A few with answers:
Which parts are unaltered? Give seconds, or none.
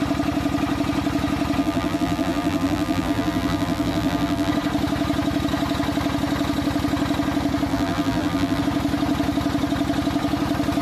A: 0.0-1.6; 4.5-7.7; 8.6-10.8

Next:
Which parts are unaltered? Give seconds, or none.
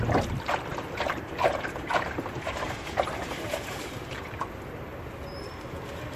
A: 0.0-0.7; 4.4-6.2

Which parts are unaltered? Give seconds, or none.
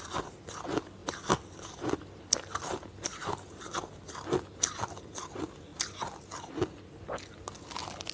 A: 0.0-8.1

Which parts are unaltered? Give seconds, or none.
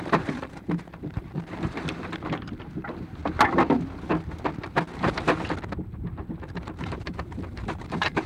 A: 3.2-6.8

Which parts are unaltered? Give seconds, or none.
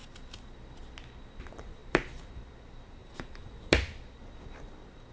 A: 0.0-3.0; 3.5-5.1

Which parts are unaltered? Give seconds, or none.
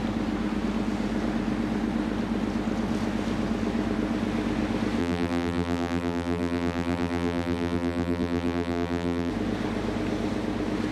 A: 0.0-5.0; 9.3-10.9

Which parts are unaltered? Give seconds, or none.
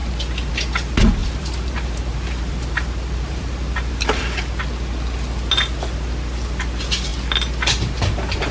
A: 0.0-1.2; 4.2-8.5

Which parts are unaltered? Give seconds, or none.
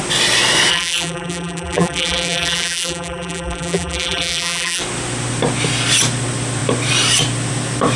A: 0.0-0.7; 4.8-8.0